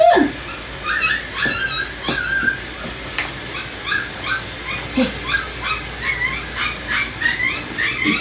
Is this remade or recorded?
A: recorded